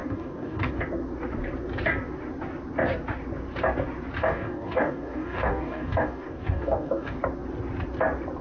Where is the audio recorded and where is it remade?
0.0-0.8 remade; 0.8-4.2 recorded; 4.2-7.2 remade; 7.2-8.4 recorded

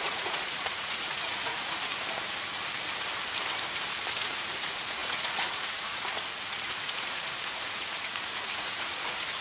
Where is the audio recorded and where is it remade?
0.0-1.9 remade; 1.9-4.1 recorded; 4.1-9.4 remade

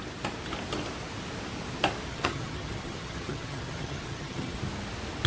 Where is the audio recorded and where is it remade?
0.0-2.1 recorded; 2.1-4.6 remade; 4.6-5.3 recorded